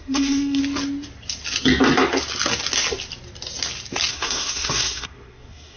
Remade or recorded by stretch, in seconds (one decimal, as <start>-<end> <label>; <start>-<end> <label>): 0.0-0.6 remade; 0.6-4.1 recorded; 4.1-5.8 remade